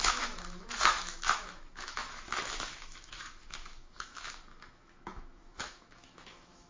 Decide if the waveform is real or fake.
fake